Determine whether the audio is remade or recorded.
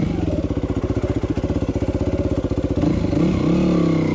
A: recorded